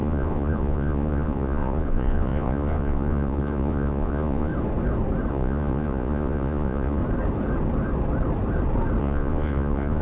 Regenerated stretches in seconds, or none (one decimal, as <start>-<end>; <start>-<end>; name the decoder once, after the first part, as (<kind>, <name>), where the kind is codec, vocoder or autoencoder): 0.0-4.5 (vocoder, Vocos); 5.3-7.0; 9.0-10.0